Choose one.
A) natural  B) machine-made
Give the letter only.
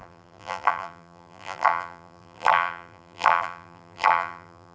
B